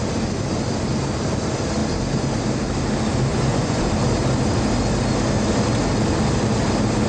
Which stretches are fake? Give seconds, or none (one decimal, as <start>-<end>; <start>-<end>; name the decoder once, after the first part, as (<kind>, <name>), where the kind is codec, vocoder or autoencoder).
3.3-3.9 (vocoder, Vocos)